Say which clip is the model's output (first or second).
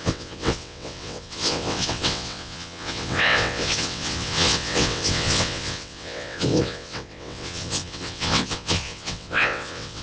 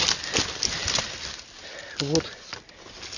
first